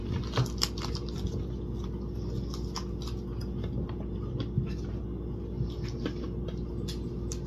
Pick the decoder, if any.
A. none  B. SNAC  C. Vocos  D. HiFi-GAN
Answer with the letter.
A